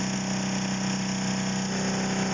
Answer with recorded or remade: recorded